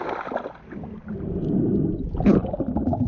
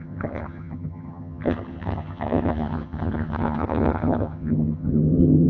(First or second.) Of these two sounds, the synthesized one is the second